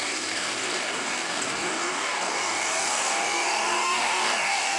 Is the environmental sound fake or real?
fake